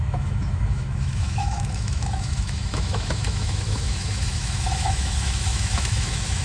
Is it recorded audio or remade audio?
remade